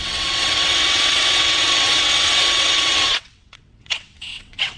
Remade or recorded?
remade